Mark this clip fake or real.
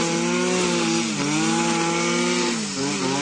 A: real